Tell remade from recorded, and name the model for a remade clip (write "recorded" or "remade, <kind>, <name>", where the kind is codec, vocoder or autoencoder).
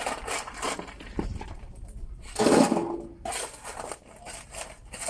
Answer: recorded